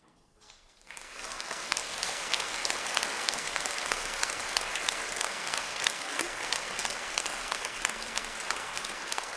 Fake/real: fake